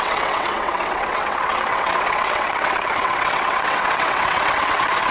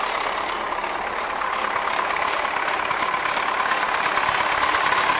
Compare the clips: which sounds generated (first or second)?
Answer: first